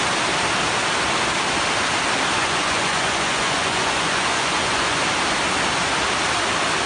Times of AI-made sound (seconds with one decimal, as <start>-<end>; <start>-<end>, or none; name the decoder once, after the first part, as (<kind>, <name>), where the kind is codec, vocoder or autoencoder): 2.4-5.0 (vocoder, Vocos)